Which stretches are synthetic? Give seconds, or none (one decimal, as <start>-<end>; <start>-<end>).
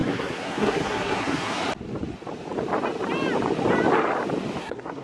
0.0-1.6; 4.6-5.0